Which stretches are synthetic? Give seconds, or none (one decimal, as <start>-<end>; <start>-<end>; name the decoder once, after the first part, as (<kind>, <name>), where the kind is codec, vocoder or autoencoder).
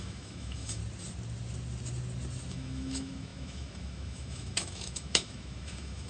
0.0-0.8 (autoencoder, DAC-VAE); 2.5-6.1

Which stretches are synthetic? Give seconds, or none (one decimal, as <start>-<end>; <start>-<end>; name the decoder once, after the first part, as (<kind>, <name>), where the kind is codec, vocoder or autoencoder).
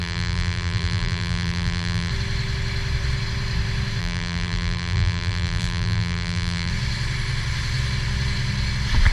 0.0-2.1 (vocoder, BigVGAN v2); 4.0-6.7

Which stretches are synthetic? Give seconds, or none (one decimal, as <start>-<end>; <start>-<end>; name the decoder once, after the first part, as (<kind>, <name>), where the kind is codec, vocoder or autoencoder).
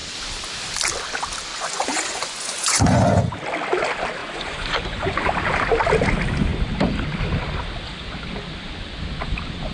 1.5-3.3 (vocoder, Vocos); 4.2-5.3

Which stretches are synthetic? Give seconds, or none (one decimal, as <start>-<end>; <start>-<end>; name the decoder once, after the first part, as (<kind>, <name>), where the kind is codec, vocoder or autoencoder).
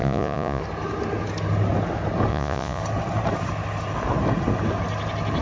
0.0-0.6 (vocoder, Vocos); 2.3-2.8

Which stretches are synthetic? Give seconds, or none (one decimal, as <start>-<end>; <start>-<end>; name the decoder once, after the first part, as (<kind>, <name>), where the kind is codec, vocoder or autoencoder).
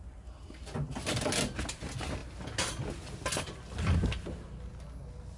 none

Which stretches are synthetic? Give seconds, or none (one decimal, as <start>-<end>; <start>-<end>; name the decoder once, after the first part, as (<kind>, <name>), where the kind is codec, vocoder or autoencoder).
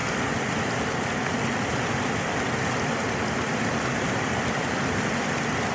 3.3-5.7 (vocoder, BigVGAN v2)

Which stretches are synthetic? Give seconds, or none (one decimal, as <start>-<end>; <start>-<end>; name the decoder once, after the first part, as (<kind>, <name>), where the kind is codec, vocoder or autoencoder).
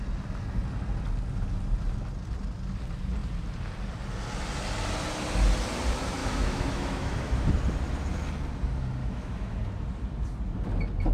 6.2-7.5 (autoencoder, DAC-VAE); 9.0-9.6